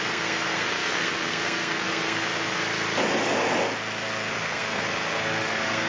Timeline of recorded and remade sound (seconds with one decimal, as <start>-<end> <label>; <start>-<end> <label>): 0.0-2.6 remade; 2.6-4.3 recorded; 4.3-5.9 remade